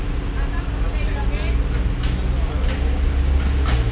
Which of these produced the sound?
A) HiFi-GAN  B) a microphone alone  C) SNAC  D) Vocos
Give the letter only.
B